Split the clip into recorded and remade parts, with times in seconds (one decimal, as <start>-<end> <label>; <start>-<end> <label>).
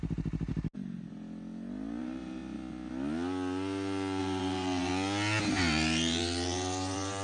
0.0-0.5 remade; 0.5-2.0 recorded; 2.0-2.4 remade; 2.4-4.2 recorded; 4.2-4.9 remade; 4.9-5.5 recorded; 5.5-7.2 remade